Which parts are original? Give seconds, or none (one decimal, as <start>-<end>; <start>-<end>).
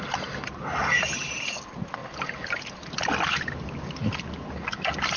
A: 0.0-5.2